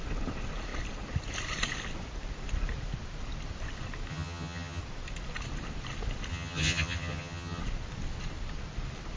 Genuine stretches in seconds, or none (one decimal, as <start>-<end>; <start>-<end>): 0.0-4.1; 4.8-6.3; 7.6-9.2